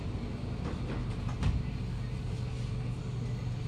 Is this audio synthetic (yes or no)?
no